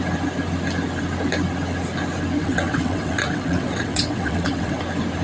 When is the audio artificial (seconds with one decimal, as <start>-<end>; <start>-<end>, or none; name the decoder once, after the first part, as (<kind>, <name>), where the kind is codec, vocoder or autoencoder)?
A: 2.4-4.8 (vocoder, WaveNeXt)